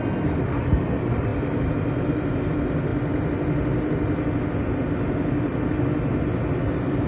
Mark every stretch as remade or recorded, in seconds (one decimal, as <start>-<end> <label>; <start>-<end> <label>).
0.0-7.1 recorded